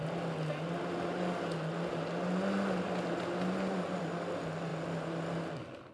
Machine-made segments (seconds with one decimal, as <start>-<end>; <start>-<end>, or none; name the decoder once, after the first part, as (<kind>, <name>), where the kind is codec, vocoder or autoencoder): none